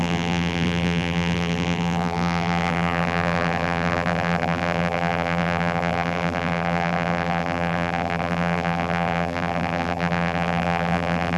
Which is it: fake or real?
fake